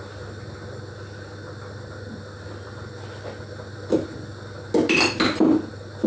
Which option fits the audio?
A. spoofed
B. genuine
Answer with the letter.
B